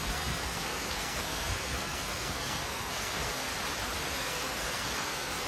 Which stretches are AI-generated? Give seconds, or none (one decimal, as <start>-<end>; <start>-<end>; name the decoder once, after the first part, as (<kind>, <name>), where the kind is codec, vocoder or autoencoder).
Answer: 0.0-3.5 (codec, SNAC); 4.0-5.5